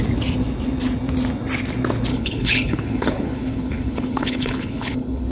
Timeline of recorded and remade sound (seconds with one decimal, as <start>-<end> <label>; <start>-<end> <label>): 0.0-2.1 recorded; 2.1-5.3 remade